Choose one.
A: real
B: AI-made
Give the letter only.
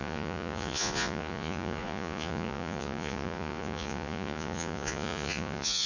B